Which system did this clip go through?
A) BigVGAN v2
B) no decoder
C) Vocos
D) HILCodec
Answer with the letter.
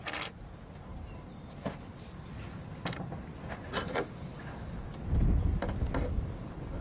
B